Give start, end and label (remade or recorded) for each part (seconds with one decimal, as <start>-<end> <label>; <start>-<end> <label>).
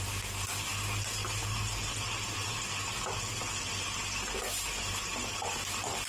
0.0-6.1 recorded